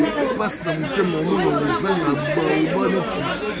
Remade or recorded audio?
recorded